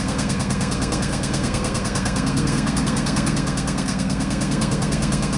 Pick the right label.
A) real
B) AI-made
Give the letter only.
B